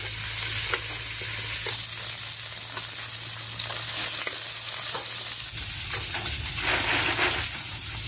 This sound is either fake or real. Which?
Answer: real